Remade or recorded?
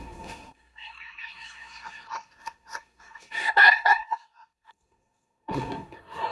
remade